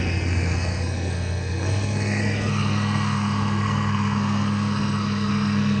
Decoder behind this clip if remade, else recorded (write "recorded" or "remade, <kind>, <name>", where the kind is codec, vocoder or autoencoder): remade, codec, SNAC